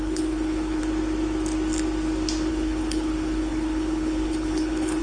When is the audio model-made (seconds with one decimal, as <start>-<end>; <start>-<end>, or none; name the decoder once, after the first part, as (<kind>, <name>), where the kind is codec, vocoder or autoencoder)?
0.0-0.8 (codec, HILCodec); 2.5-5.0